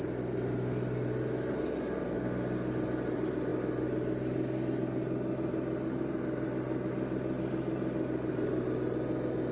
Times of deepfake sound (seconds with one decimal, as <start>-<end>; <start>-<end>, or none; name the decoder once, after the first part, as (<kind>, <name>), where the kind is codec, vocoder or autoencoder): none